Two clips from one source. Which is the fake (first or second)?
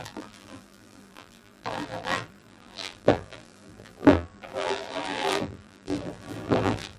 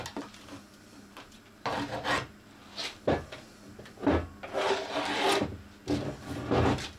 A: first